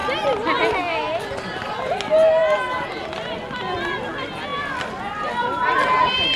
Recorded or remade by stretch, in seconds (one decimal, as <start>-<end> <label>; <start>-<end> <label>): 0.0-6.4 recorded